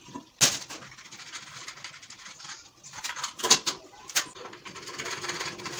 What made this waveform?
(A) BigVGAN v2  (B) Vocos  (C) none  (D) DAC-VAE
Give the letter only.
C